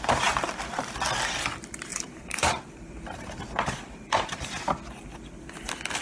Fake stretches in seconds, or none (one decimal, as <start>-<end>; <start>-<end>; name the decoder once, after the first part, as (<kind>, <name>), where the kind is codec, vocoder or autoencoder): 1.9-4.7 (vocoder, BigVGAN v2)